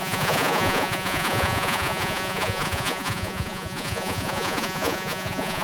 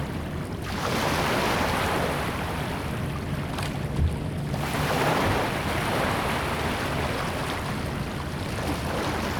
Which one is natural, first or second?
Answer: second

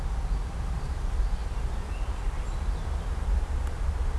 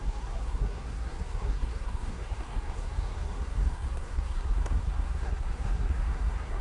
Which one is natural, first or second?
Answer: first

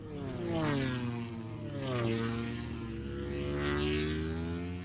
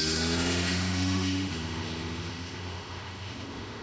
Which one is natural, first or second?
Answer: first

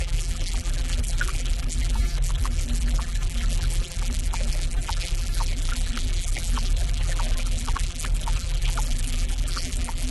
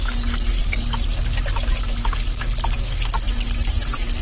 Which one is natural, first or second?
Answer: second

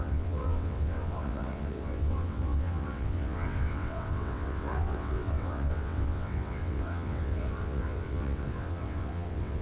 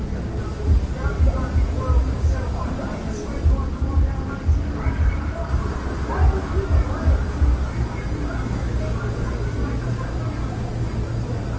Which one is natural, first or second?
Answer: second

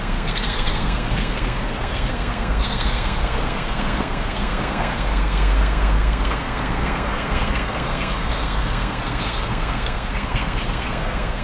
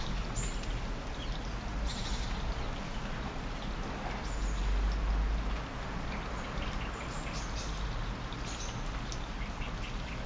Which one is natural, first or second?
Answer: second